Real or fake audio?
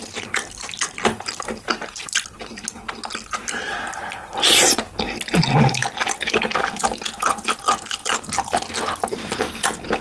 real